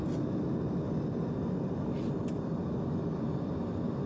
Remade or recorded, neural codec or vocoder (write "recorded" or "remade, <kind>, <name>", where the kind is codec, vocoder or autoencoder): recorded